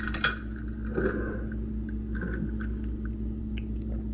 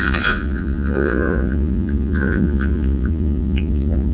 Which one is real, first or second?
first